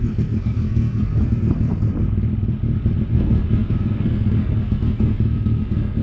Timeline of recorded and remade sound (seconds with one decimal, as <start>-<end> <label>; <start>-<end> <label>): 0.0-1.7 remade; 1.7-3.1 recorded; 3.1-6.0 remade